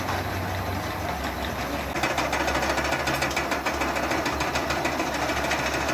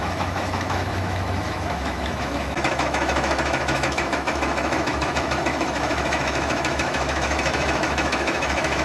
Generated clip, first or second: second